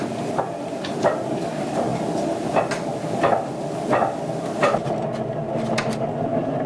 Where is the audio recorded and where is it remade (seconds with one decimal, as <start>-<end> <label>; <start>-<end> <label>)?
0.0-6.7 recorded